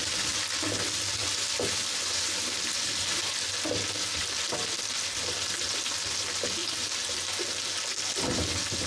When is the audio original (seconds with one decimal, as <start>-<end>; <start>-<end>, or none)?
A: 0.0-8.9